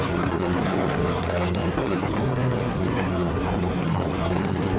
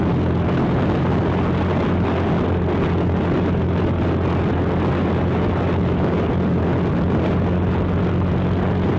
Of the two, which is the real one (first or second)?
second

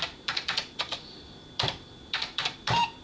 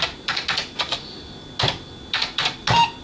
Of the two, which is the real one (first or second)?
second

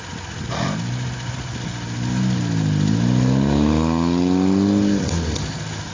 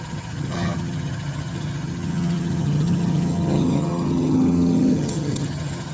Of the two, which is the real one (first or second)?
first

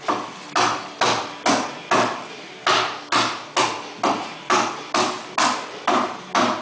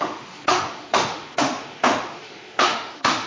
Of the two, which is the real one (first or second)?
first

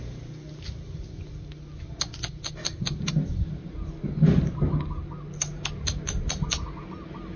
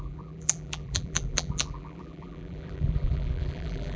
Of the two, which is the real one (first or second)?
first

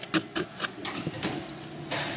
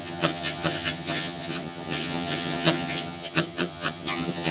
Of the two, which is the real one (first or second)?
first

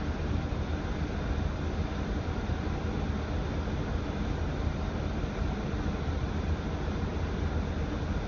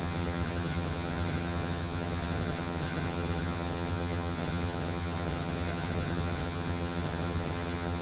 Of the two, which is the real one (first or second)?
first